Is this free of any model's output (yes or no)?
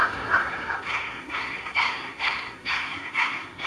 no